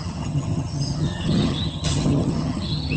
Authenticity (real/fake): fake